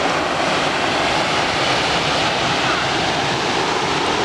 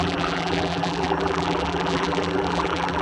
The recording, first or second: first